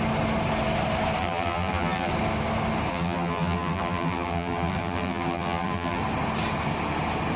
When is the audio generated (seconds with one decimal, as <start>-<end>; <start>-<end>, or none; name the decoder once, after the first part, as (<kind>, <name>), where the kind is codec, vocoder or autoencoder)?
1.2-2.1 (vocoder, BigVGAN v2); 2.9-6.0

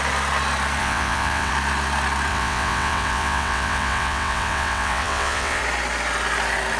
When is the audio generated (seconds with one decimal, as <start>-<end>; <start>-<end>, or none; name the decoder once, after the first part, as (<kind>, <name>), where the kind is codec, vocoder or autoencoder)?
0.8-1.5 (vocoder, WaveNeXt); 2.3-5.6

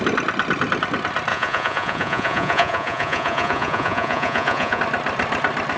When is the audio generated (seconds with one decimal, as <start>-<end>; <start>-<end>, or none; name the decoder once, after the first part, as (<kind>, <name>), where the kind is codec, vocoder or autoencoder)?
1.3-4.8 (vocoder, Vocos)

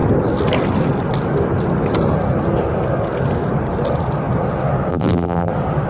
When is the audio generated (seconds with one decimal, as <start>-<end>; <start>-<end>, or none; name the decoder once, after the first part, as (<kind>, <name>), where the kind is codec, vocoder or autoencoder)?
4.9-5.5 (vocoder, BigVGAN v2)